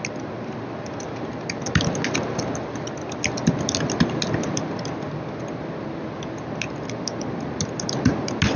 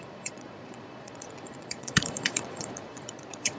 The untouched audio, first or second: first